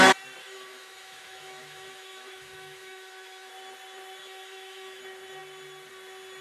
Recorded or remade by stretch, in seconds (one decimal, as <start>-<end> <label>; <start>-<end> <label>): 0.0-0.4 recorded; 0.4-3.5 remade; 3.5-4.2 recorded; 4.2-5.0 remade; 5.0-6.4 recorded